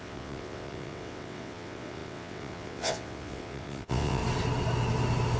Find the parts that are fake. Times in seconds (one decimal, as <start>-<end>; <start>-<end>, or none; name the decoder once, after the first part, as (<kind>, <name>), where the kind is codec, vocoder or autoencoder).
0.0-4.2 (vocoder, WaveNeXt)